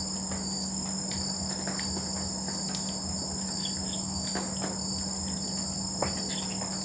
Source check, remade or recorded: recorded